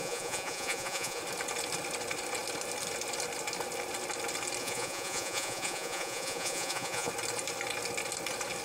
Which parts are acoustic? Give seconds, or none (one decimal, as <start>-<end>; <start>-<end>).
1.2-4.6; 7.1-8.6